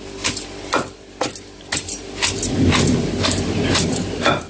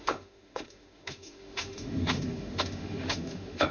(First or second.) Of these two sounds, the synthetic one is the second